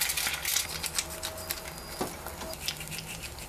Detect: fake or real real